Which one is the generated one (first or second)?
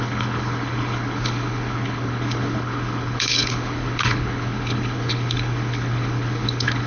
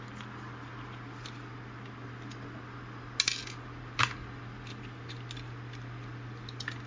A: first